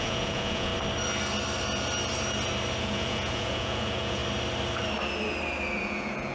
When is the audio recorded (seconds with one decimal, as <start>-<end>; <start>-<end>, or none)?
0.7-2.8; 4.2-5.8